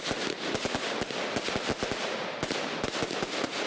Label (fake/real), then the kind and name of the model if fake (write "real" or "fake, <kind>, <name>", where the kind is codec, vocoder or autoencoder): real